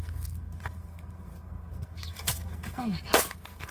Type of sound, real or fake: fake